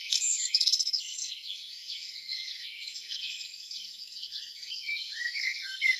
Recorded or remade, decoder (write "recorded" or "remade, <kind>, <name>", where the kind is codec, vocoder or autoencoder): remade, codec, SNAC